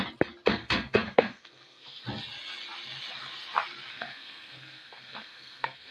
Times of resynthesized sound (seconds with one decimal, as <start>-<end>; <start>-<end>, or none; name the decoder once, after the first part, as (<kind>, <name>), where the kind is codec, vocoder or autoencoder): 0.5-2.0 (codec, SNAC); 3.9-5.9